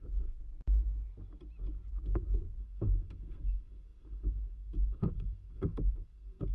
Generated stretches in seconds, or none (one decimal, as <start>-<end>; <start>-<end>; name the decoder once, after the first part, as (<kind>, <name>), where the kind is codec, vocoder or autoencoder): 0.0-0.4 (codec, SNAC); 1.9-6.5